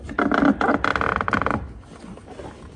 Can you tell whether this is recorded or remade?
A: recorded